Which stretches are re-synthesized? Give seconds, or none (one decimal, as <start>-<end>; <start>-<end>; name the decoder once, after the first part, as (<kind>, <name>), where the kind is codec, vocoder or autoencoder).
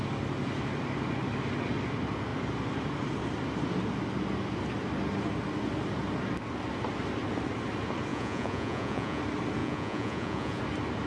8.1-9.2 (vocoder, Vocos); 9.6-10.6